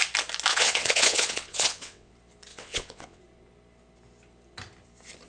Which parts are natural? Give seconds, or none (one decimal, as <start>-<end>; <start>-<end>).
0.0-0.5; 2.1-2.5; 3.2-5.3